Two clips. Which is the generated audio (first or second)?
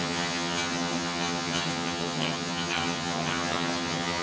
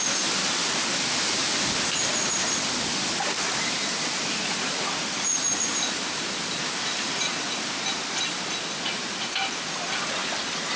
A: first